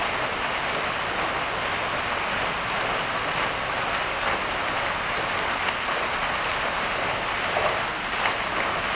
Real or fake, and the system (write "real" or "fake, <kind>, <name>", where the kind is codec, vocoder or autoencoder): real